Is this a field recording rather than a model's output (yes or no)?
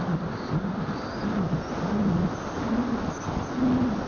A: yes